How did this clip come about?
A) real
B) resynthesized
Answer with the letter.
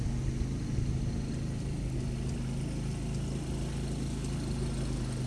A